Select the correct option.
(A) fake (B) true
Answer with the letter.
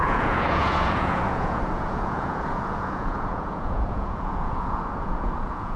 A